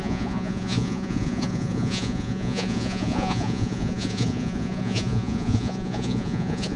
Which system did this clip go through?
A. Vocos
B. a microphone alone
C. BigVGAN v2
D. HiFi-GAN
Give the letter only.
A